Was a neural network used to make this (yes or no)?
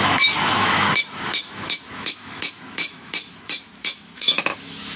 yes